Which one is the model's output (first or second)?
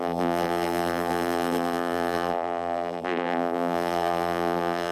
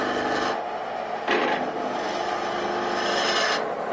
first